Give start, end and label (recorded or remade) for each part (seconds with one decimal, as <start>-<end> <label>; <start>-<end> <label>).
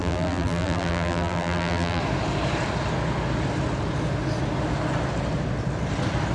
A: 0.0-2.0 remade; 2.0-6.3 recorded